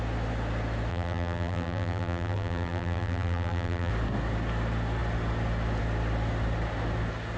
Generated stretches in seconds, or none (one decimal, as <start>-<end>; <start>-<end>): 0.9-3.9